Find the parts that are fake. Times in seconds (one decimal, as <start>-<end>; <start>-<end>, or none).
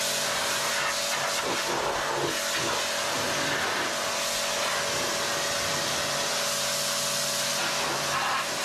none